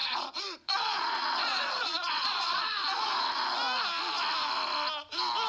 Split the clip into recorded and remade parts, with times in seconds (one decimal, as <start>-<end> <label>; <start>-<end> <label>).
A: 0.0-3.3 remade; 3.3-5.5 recorded